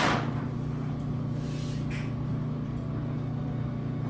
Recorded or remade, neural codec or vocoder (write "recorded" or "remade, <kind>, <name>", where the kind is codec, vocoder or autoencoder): recorded